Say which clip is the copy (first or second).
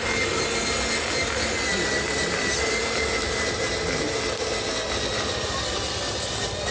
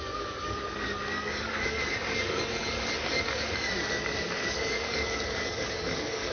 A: second